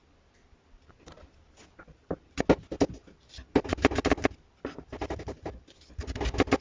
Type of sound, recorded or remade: recorded